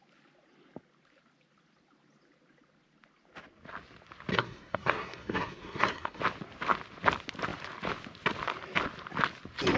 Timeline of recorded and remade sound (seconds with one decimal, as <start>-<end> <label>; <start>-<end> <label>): 0.0-4.3 recorded; 4.3-6.2 remade; 6.2-9.8 recorded